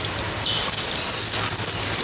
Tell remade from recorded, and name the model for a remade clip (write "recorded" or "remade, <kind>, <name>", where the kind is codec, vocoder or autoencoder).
recorded